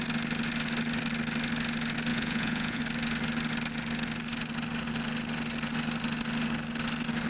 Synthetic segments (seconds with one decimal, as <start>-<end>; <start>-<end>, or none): 2.1-2.8